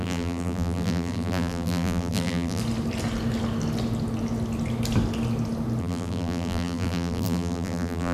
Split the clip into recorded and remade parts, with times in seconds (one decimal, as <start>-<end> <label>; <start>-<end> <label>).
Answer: 0.0-2.6 remade; 2.6-5.8 recorded; 5.8-8.1 remade